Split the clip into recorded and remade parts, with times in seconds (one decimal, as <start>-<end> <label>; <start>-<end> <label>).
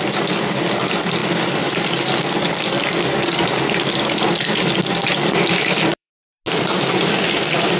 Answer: 0.0-6.1 remade; 6.1-7.8 recorded